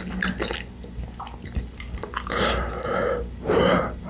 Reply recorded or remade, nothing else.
recorded